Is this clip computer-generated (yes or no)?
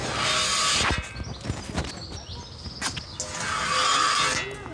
no